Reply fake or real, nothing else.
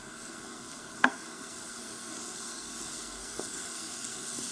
fake